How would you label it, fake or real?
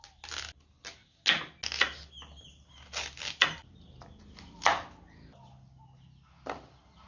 real